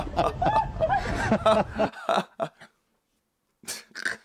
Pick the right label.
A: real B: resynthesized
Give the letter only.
A